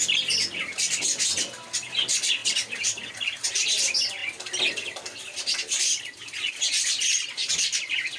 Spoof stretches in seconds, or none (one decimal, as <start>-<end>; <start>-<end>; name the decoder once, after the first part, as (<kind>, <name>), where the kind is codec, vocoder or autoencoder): none